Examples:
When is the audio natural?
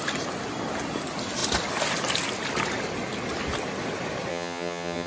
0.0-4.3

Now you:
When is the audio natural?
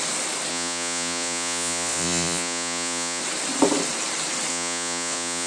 0.0-0.5; 3.2-4.5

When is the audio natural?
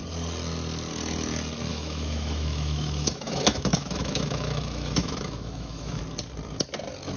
0.0-1.7; 6.0-7.2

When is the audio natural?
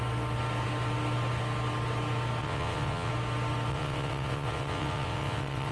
0.0-2.4; 3.1-3.7